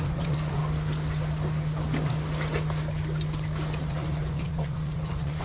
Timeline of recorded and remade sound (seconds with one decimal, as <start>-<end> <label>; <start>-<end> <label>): 0.0-0.6 remade; 0.6-3.8 recorded; 3.8-5.4 remade